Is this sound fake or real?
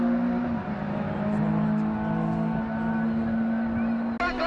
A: real